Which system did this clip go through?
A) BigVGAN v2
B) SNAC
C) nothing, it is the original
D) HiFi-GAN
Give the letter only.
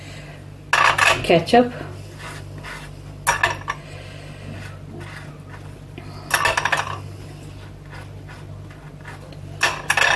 C